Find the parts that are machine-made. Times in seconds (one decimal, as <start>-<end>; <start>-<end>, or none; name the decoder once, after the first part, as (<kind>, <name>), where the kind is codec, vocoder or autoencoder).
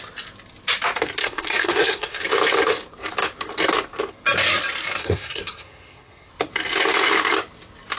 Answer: 1.2-2.2 (codec, SNAC); 5.0-6.3